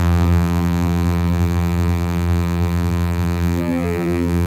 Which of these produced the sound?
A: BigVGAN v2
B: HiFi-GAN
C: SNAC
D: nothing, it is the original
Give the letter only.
A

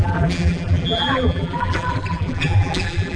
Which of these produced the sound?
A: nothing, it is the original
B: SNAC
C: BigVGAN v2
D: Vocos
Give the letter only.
C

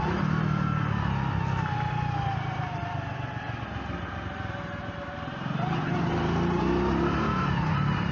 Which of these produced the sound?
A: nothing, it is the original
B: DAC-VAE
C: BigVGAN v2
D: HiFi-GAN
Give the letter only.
A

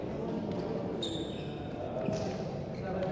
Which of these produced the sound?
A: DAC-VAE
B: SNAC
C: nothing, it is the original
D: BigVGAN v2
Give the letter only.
C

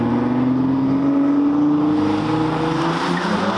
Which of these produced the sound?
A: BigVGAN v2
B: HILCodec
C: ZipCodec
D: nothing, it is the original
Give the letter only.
D